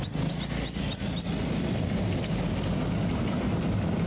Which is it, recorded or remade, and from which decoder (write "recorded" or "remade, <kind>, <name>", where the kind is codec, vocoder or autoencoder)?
recorded